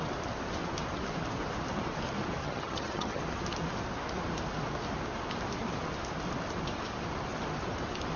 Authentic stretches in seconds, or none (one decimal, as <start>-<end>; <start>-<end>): 0.0-2.4; 3.2-8.2